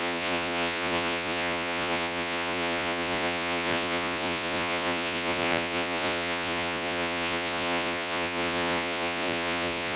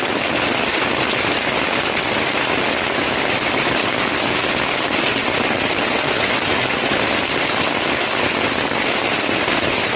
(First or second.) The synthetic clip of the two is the first